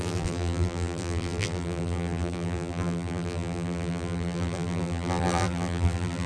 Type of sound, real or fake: fake